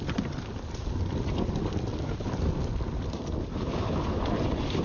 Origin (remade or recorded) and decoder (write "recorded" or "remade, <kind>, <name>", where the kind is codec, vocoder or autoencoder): recorded